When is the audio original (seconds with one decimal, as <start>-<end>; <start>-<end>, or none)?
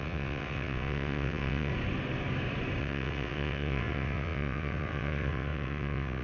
1.7-2.8